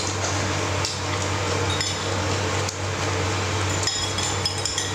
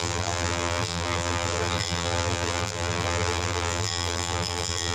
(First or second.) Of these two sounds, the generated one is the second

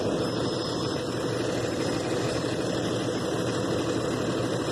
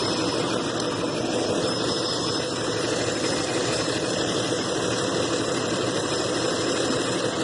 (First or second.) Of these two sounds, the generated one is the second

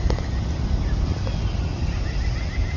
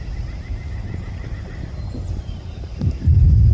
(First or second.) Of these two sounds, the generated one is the second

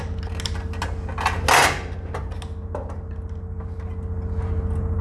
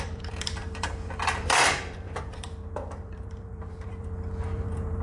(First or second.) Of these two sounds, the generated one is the second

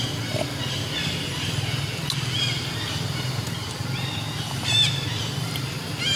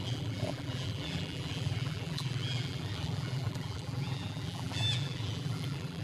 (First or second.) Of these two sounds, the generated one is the second